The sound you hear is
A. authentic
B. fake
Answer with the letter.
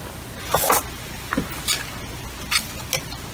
A